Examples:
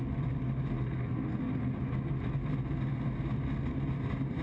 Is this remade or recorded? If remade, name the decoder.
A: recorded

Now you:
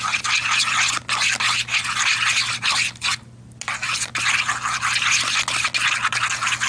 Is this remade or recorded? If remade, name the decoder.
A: recorded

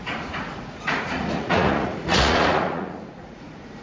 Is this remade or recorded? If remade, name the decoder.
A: remade, vocoder, Vocos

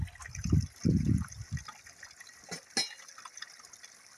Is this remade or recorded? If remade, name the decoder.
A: recorded